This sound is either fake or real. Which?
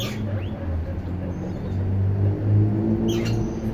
real